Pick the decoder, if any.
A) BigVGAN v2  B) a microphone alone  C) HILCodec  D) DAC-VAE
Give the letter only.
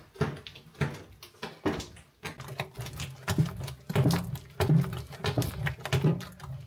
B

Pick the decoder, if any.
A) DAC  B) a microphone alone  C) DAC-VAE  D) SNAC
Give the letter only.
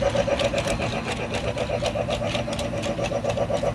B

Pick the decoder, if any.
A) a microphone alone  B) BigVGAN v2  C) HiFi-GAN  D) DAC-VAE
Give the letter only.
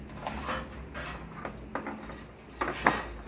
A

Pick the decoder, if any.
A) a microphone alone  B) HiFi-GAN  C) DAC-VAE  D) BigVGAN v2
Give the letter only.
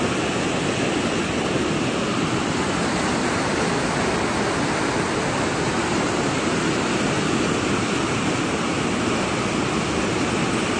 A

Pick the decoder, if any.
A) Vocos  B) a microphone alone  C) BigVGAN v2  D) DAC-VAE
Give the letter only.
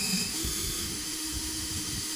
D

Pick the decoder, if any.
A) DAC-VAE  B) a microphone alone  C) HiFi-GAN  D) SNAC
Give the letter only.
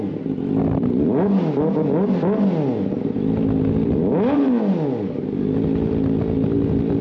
B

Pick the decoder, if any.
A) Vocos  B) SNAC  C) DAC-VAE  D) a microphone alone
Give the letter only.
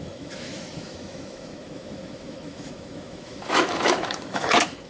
C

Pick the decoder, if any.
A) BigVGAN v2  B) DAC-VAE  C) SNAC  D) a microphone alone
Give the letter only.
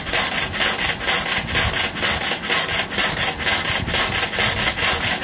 D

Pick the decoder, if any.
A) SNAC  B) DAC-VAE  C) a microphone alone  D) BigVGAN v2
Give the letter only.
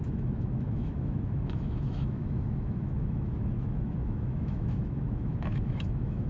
B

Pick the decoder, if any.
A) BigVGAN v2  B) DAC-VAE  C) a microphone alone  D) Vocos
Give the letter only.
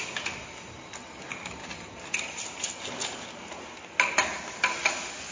C